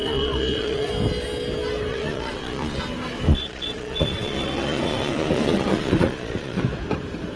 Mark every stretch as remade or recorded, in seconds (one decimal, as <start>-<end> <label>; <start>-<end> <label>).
0.0-0.9 remade; 0.9-1.9 recorded; 1.9-2.8 remade; 2.8-3.3 recorded; 3.3-6.6 remade; 6.6-7.4 recorded